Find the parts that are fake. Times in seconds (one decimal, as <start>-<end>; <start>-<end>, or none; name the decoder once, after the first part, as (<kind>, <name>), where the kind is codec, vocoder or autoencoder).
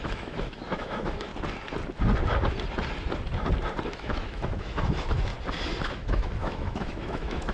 0.0-1.3 (autoencoder, DAC-VAE); 3.9-5.3; 5.9-7.5